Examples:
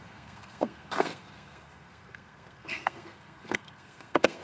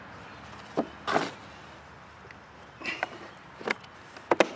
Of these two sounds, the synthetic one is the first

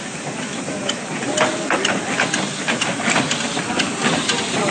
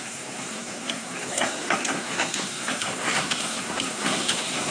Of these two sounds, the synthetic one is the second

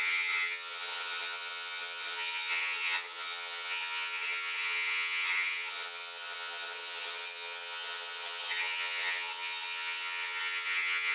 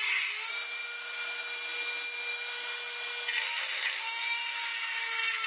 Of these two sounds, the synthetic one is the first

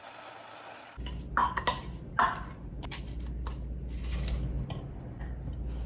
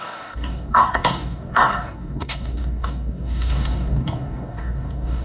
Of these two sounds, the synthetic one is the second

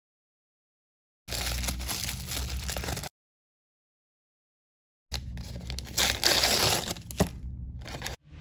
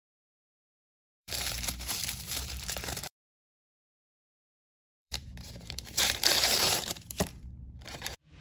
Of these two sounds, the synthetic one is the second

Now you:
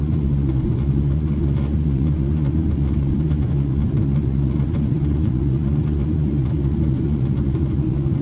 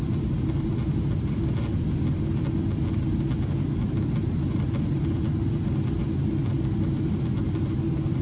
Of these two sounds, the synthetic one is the first